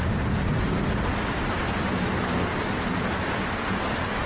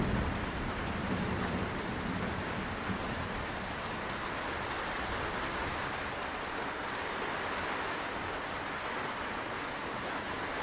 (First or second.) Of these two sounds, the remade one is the second